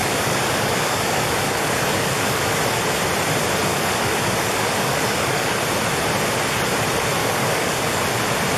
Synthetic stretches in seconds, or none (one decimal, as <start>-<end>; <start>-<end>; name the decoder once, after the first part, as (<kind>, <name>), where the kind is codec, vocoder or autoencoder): 0.0-2.6 (codec, DAC); 3.7-5.6; 7.2-8.0